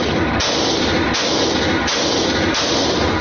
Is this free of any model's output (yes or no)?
yes